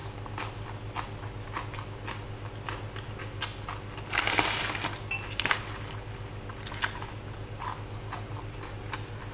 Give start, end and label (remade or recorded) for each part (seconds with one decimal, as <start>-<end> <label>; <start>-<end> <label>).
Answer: 0.0-9.3 recorded